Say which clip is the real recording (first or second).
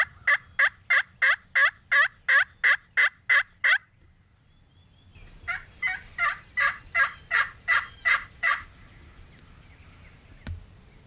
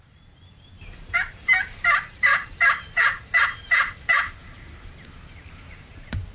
first